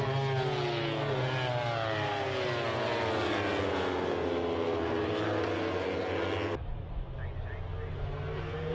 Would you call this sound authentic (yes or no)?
yes